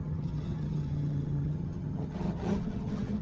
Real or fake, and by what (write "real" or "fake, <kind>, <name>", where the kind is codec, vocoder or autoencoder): fake, vocoder, HiFi-GAN